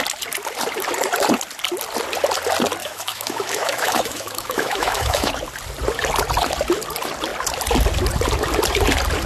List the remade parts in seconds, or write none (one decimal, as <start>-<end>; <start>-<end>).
2.8-5.3

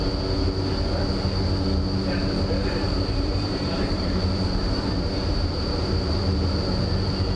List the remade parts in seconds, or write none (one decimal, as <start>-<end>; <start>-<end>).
2.6-7.0